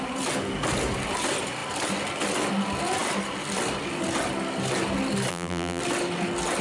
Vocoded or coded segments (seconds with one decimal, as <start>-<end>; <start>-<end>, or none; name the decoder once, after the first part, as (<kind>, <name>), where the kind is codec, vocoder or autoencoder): 5.3-5.8 (vocoder, BigVGAN v2)